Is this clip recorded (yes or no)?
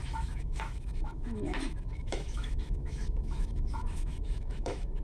no